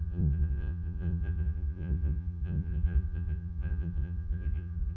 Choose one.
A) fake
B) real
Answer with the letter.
A